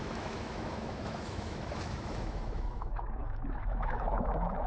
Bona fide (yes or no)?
no